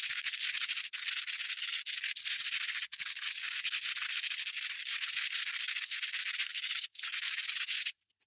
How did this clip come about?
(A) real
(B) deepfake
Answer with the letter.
A